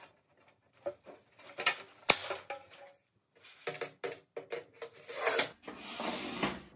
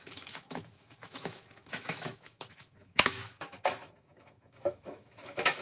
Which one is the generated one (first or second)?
second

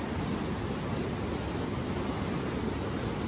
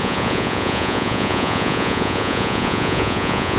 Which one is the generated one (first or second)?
second